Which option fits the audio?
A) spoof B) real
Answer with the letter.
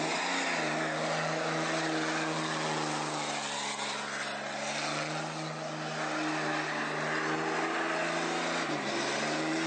B